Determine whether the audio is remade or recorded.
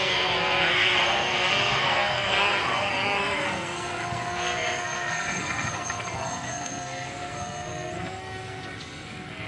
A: remade